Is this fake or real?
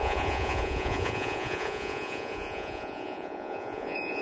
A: fake